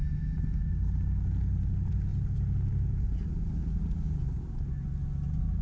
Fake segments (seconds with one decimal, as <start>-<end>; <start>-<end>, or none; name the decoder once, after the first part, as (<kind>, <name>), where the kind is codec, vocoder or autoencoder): none